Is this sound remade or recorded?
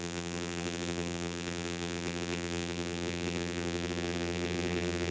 remade